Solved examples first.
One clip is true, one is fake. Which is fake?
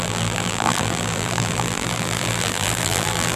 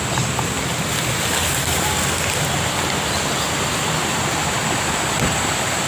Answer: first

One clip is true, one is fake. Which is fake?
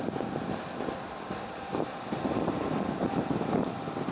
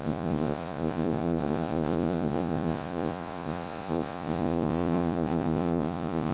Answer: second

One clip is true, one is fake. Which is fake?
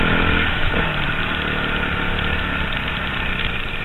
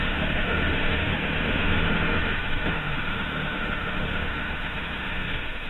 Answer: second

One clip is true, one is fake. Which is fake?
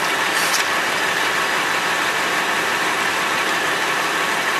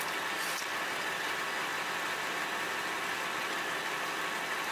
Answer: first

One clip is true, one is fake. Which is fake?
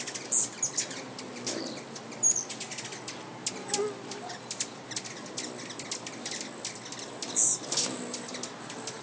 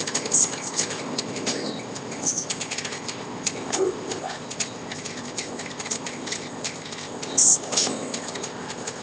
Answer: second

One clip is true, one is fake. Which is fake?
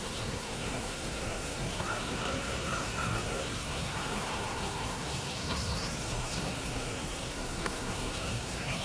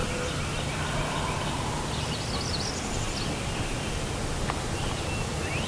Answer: first